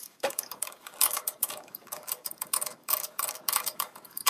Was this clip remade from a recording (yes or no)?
yes